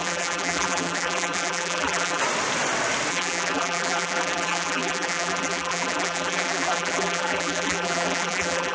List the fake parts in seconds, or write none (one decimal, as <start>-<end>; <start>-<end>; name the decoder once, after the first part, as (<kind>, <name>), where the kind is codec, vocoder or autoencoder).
0.0-2.2 (vocoder, BigVGAN v2); 3.1-8.7